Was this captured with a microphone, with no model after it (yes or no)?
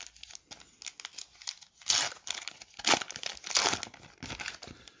yes